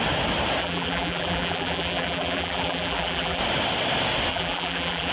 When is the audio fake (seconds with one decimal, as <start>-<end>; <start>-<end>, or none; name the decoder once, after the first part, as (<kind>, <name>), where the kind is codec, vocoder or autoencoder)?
0.6-3.4 (vocoder, BigVGAN v2); 4.3-5.1

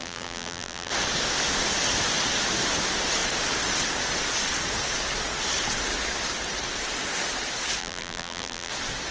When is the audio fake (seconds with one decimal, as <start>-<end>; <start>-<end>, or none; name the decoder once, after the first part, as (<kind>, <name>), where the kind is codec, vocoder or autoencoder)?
0.0-0.9 (vocoder, BigVGAN v2); 7.8-8.7

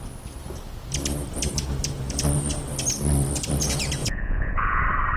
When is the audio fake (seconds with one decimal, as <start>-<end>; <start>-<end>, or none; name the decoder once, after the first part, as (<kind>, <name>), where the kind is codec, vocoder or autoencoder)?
4.0-4.8 (vocoder, Vocos)

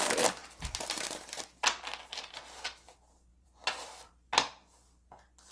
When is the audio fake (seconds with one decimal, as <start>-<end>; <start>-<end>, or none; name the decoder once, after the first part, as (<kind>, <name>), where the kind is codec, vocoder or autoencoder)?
3.3-4.1 (vocoder, BigVGAN v2)

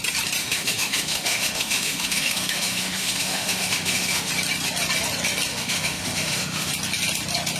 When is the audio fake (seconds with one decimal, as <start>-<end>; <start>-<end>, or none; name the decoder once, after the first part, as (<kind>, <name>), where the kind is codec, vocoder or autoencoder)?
0.4-4.3 (autoencoder, DAC-VAE); 5.5-6.7

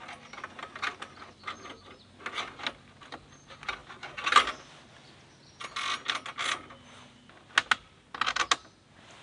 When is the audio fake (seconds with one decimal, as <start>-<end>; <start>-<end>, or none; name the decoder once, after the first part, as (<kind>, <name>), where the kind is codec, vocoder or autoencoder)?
none

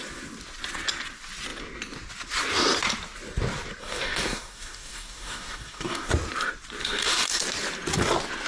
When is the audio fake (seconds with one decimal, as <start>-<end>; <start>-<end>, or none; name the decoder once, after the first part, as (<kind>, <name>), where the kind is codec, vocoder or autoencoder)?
3.8-6.1 (codec, DAC); 6.8-7.4